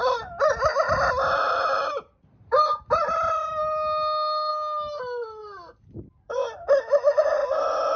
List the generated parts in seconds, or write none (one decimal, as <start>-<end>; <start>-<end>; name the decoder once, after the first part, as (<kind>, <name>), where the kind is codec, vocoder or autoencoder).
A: none